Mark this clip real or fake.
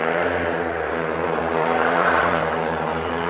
fake